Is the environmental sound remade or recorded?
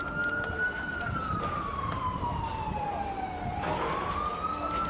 recorded